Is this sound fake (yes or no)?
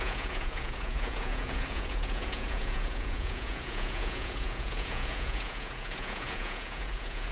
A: yes